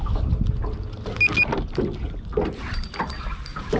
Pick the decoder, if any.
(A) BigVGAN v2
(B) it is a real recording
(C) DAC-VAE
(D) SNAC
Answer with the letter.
B